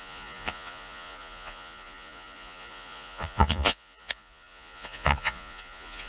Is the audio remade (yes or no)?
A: yes